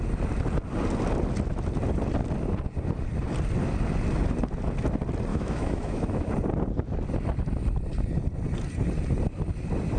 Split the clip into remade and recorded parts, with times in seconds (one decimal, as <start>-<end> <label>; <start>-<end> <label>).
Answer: 0.0-5.3 recorded; 5.3-6.3 remade; 6.3-10.0 recorded